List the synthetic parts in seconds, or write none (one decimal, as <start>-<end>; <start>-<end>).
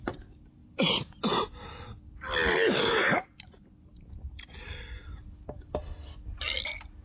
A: none